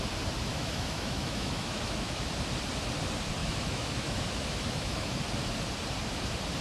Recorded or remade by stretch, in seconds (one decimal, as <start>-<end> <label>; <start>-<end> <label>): 0.0-0.5 recorded; 0.5-2.3 remade; 2.3-3.4 recorded; 3.4-5.2 remade; 5.2-6.6 recorded

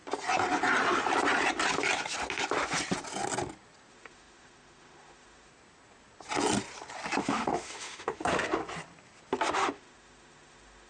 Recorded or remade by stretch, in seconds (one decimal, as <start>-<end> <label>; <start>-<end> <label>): 0.0-3.9 recorded; 3.9-5.5 remade; 5.5-7.2 recorded; 7.2-8.6 remade; 8.6-9.5 recorded; 9.5-10.9 remade

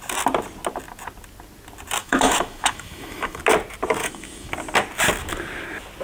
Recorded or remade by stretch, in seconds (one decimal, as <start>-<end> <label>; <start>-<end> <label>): 0.0-2.0 recorded; 2.0-3.4 remade; 3.4-4.0 recorded; 4.0-4.5 remade; 4.5-6.0 recorded

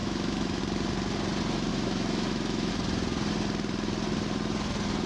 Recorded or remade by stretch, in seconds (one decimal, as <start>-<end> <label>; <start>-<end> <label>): 0.0-0.6 remade; 0.6-1.7 recorded; 1.7-2.7 remade; 2.7-5.1 recorded

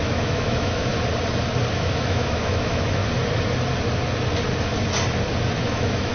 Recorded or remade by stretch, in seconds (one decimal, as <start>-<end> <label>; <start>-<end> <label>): 0.0-0.9 remade; 0.9-1.7 recorded; 1.7-3.0 remade; 3.0-5.6 recorded; 5.6-6.1 remade